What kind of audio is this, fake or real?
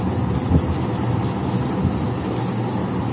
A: real